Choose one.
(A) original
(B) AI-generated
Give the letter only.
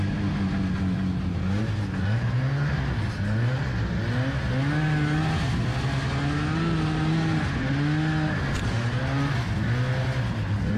A